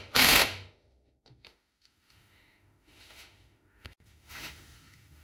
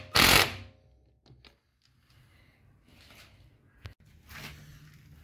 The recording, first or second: second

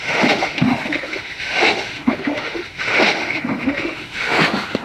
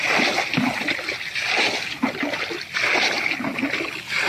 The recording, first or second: second